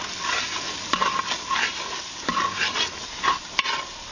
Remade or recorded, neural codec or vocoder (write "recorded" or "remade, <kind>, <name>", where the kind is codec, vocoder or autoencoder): recorded